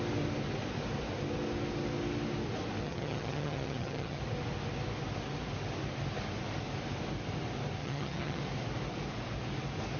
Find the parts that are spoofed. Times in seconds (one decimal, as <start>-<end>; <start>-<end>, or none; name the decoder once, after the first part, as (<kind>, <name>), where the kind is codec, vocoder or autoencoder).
2.8-4.2 (vocoder, HiFi-GAN); 7.8-8.4